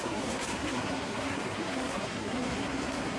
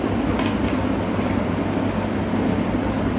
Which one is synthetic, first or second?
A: first